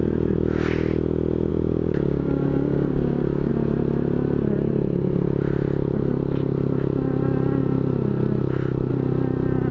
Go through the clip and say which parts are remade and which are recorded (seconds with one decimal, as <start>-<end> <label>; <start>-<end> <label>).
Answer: 0.0-1.5 recorded; 1.5-3.5 remade; 3.5-9.7 recorded